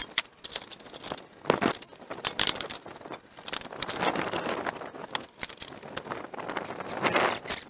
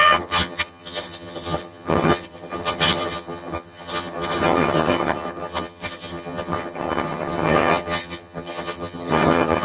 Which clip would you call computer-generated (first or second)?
second